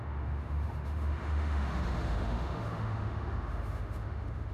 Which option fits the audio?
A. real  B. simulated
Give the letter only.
B